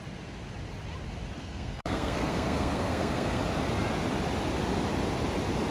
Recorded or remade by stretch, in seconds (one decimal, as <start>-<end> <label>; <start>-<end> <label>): 0.0-1.4 recorded; 1.4-3.4 remade; 3.4-5.7 recorded